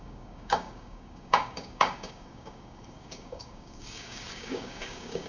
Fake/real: fake